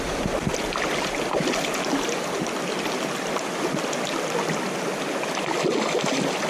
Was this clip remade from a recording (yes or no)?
no